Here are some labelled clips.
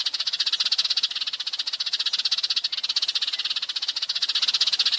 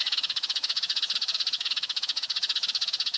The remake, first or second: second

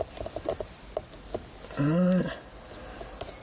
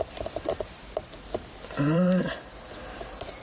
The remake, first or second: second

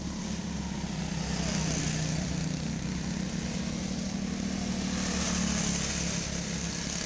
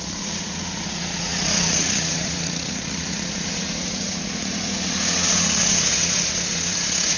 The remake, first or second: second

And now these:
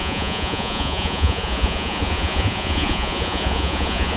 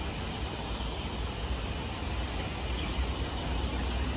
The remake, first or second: first